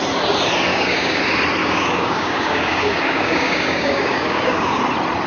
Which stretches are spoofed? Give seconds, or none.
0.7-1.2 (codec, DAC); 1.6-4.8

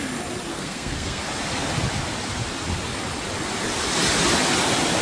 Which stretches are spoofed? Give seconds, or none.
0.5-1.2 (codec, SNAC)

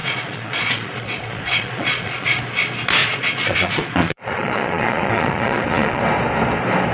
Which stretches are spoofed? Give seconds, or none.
0.0-2.4 (vocoder, Vocos); 3.0-6.0